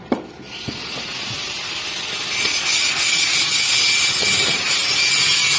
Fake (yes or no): no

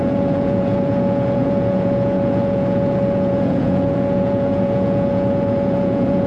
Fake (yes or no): yes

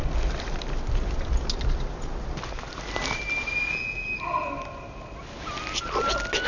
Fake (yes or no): no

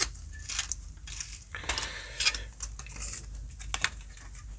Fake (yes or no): no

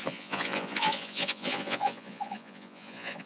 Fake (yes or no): yes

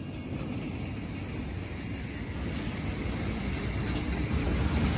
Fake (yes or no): no